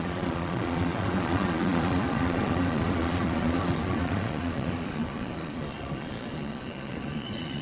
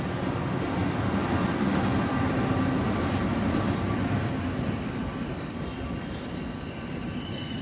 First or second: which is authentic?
second